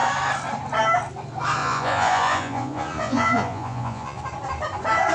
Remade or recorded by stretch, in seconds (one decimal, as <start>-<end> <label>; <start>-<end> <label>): 0.0-1.6 recorded; 1.6-4.2 remade; 4.2-5.1 recorded